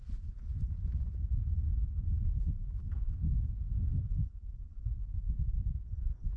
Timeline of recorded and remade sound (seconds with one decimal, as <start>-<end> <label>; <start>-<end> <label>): 0.0-2.8 recorded; 2.8-5.2 remade; 5.2-6.4 recorded